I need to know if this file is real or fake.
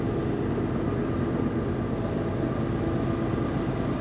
real